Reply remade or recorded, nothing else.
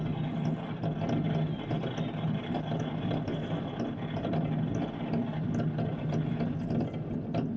recorded